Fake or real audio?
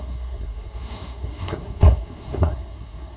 fake